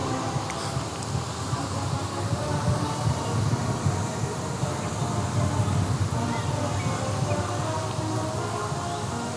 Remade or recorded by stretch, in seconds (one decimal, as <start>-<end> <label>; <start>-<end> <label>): 0.0-9.4 recorded

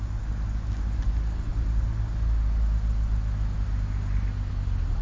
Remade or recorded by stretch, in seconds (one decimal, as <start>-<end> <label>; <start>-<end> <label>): 0.0-5.0 recorded

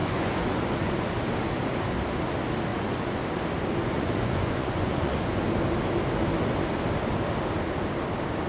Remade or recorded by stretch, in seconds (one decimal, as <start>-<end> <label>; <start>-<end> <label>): 0.0-1.0 remade; 1.0-2.7 recorded; 2.7-3.2 remade; 3.2-3.8 recorded; 3.8-5.4 remade; 5.4-8.5 recorded

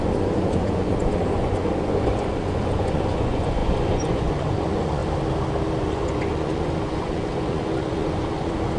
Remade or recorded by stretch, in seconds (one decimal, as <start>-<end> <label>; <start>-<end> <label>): 0.0-5.0 remade; 5.0-5.8 recorded; 5.8-8.8 remade

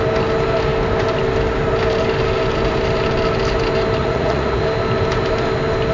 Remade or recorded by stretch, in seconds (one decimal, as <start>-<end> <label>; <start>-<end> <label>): 0.0-4.0 recorded; 4.0-4.6 remade; 4.6-5.9 recorded

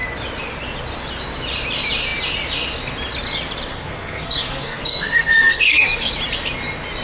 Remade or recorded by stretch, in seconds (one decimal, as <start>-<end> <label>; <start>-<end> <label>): 0.0-3.7 recorded; 3.7-6.1 remade; 6.1-7.0 recorded

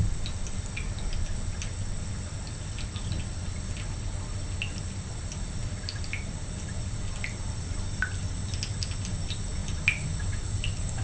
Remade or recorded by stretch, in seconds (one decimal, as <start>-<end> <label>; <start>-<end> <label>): 0.0-11.0 recorded

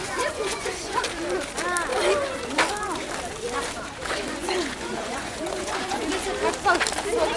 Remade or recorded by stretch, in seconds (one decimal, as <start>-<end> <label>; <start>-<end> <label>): 0.0-1.0 remade; 1.0-4.3 recorded; 4.3-6.1 remade; 6.1-7.4 recorded